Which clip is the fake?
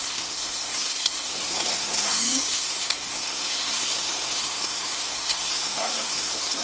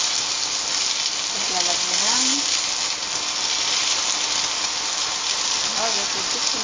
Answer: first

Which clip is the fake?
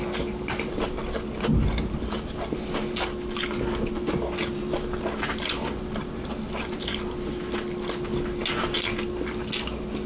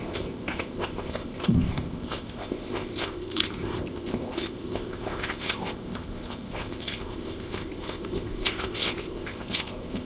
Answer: second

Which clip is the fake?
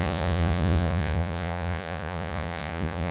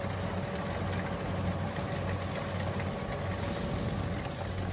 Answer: first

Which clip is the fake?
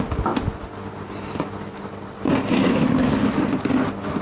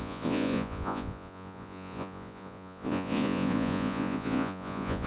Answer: second